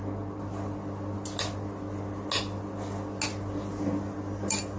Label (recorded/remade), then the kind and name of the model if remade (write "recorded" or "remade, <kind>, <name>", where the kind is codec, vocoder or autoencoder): recorded